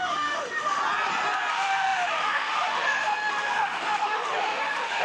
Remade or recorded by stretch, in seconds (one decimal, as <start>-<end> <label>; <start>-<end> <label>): 0.0-0.8 remade; 0.8-1.5 recorded; 1.5-5.0 remade